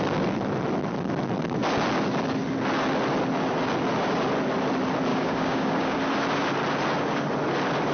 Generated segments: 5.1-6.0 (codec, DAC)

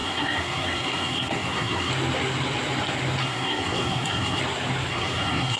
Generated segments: 0.0-1.9 (codec, SNAC); 3.2-4.4; 4.9-5.6